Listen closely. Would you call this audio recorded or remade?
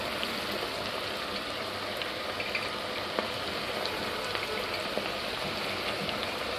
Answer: recorded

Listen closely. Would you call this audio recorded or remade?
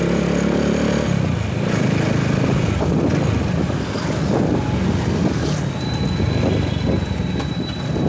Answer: recorded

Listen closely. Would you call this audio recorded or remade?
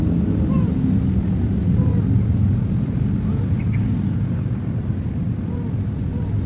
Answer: recorded